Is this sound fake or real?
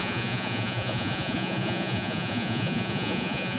fake